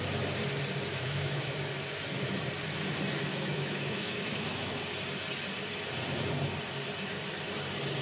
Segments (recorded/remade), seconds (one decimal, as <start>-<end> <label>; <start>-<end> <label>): 0.0-0.9 recorded; 0.9-1.5 remade; 1.5-3.3 recorded; 3.3-4.7 remade; 4.7-8.0 recorded